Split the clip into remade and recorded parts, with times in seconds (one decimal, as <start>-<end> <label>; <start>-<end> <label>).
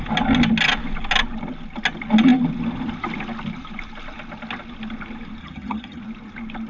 0.0-5.4 recorded; 5.4-6.0 remade; 6.0-6.7 recorded